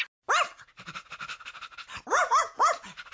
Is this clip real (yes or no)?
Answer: yes